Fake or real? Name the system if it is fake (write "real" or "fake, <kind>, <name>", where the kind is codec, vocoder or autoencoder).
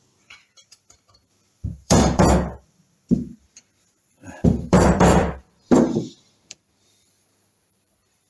fake, vocoder, BigVGAN v2